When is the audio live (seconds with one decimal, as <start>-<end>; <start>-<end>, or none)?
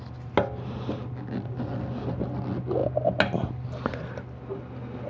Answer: 0.0-5.1